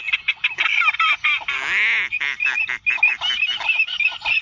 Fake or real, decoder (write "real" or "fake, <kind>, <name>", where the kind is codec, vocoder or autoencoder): real